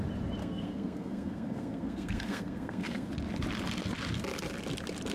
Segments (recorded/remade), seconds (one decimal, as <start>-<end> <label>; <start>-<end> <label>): 0.0-0.4 recorded; 0.4-3.1 remade; 3.1-5.1 recorded